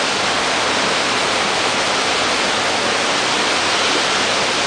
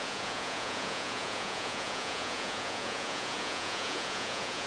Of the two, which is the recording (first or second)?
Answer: first